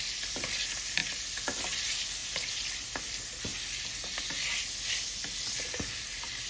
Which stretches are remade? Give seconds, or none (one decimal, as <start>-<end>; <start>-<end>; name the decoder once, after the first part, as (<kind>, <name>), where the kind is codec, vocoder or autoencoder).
none